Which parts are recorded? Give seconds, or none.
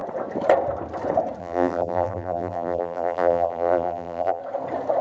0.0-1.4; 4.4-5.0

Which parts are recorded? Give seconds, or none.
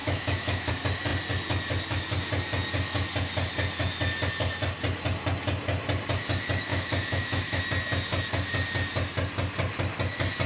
0.7-6.7; 7.6-10.5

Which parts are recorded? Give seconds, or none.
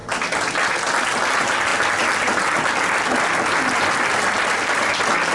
0.0-5.3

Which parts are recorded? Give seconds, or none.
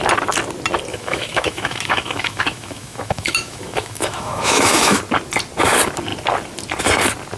0.0-0.9; 5.0-7.4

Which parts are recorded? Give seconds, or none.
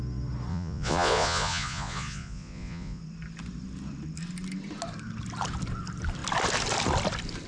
0.0-0.5; 3.0-7.5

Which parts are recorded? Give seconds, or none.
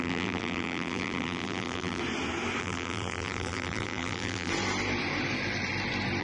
2.0-2.6; 4.5-6.2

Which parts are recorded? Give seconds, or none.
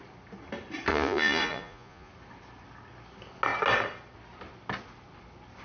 0.0-0.9; 2.1-5.6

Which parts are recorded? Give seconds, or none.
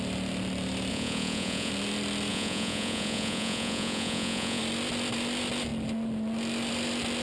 0.0-0.9; 1.7-2.3; 4.6-7.2